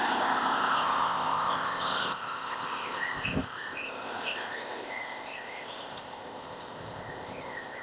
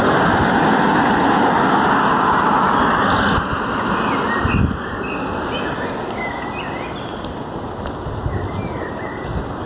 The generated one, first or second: first